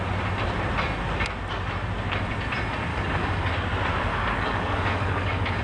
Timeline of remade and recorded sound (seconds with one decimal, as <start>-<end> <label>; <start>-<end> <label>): 0.0-2.9 recorded; 2.9-3.5 remade; 3.5-4.1 recorded; 4.1-5.6 remade